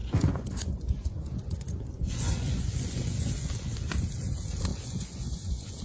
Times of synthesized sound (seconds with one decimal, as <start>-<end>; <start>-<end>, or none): 0.0-3.5; 4.7-5.8